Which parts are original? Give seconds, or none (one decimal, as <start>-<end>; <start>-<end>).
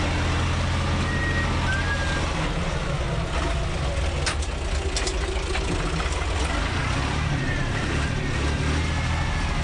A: 0.0-6.8; 8.1-9.6